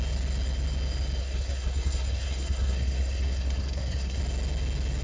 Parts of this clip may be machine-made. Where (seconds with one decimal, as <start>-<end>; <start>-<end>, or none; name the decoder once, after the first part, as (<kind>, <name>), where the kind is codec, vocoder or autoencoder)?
1.2-4.2 (codec, SNAC)